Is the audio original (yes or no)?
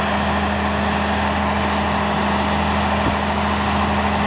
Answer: yes